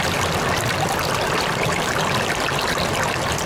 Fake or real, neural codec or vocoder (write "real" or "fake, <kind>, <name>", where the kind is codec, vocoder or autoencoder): real